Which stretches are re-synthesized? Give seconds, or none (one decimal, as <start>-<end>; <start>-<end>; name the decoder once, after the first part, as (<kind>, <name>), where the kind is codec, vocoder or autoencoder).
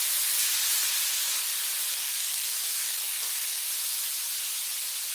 1.9-3.7 (codec, DAC)